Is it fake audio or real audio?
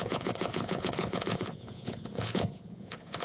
fake